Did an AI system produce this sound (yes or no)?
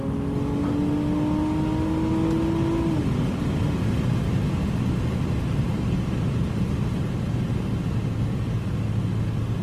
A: no